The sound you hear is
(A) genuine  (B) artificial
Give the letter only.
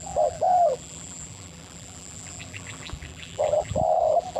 B